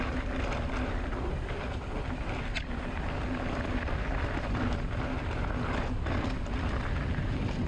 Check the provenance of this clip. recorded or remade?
recorded